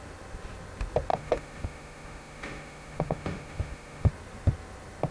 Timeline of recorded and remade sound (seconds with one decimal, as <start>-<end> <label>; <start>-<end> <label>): 0.0-1.1 recorded; 1.1-4.1 remade; 4.1-5.1 recorded